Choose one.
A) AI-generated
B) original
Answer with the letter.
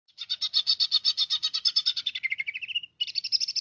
B